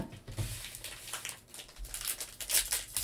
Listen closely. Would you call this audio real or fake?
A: real